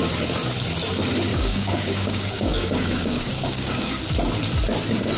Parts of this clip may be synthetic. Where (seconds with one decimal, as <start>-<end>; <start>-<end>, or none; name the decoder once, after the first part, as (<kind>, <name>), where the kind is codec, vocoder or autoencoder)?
1.3-4.0 (codec, DAC)